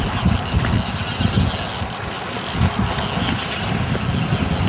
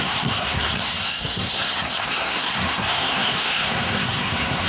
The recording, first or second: first